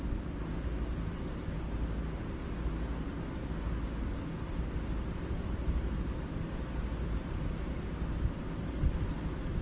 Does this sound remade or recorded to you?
recorded